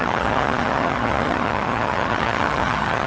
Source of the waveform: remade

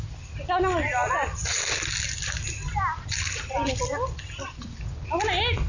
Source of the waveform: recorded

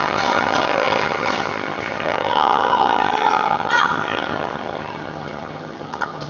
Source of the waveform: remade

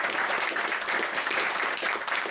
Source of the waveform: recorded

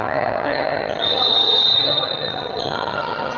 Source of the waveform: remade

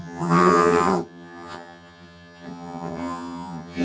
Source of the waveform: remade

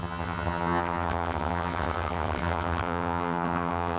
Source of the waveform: remade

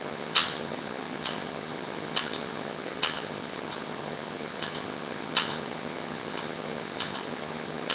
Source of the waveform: remade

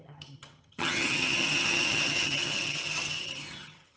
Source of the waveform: remade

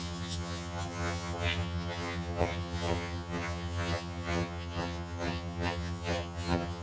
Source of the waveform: remade